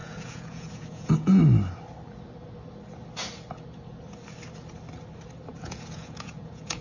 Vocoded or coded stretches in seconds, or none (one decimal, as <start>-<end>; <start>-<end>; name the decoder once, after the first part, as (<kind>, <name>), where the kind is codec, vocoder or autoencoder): 0.0-1.4 (vocoder, Vocos); 5.5-6.8